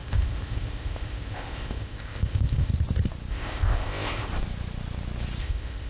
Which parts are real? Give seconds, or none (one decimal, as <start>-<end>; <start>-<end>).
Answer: 2.7-3.3; 4.3-5.4